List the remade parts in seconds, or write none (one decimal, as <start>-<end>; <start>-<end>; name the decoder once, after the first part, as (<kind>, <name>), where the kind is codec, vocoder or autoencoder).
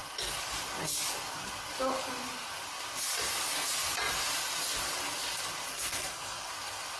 5.7-6.5 (codec, SNAC)